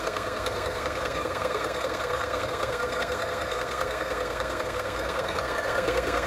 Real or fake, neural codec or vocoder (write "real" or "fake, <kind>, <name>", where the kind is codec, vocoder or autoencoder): fake, codec, SNAC